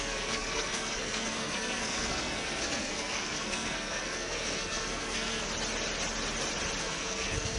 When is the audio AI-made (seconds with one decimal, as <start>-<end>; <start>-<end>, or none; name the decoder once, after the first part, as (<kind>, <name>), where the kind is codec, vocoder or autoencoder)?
0.0-5.5 (codec, SNAC); 6.8-7.6